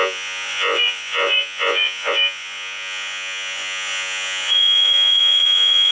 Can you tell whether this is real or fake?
fake